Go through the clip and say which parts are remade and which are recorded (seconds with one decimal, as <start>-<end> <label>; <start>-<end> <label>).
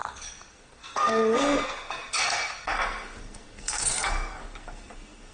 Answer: 0.0-5.3 remade